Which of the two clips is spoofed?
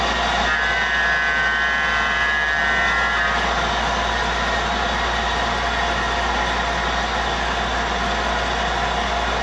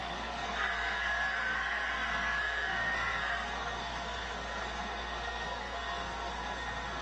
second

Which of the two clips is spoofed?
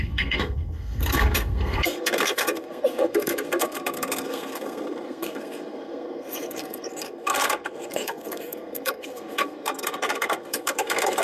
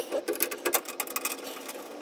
first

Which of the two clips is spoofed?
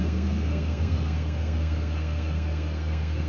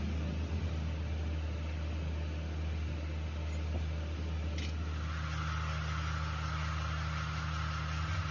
first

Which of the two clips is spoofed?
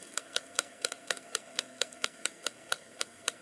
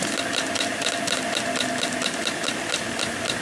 first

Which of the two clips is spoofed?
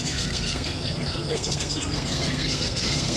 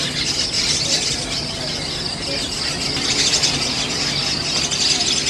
first